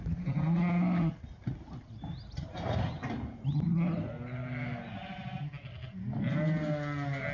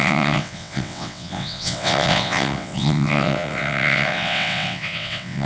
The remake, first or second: second